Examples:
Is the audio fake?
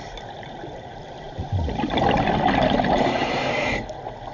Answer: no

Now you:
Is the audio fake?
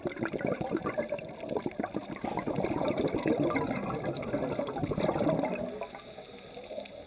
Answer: no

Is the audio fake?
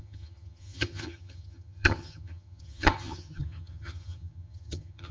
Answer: yes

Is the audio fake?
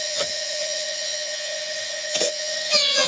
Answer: yes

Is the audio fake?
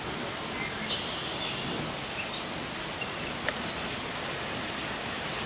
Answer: no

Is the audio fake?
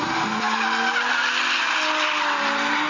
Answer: no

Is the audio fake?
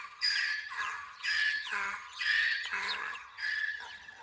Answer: yes